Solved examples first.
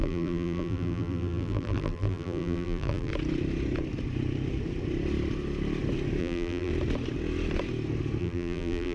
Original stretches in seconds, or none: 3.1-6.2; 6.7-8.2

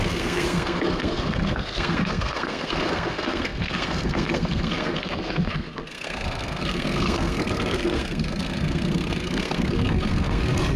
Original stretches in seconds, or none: none

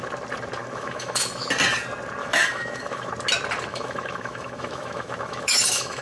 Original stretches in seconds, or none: 0.0-0.6; 1.4-2.2; 3.1-3.7